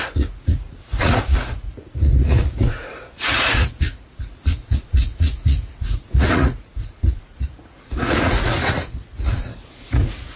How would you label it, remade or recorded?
remade